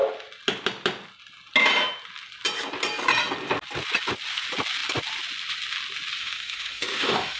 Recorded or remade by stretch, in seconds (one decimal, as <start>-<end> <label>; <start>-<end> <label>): 0.0-6.2 recorded; 6.2-7.4 remade